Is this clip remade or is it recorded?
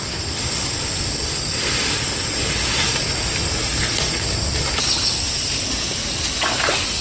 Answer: remade